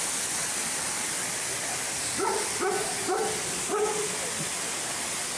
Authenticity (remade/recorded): recorded